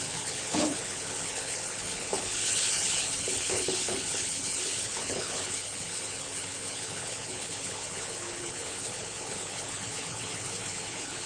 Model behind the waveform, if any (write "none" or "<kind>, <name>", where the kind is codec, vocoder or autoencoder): codec, HILCodec